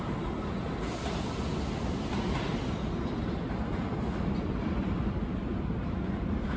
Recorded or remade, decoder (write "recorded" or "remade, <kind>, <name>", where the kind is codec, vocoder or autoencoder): recorded